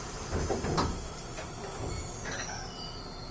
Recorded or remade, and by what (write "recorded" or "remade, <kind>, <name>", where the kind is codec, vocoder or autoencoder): recorded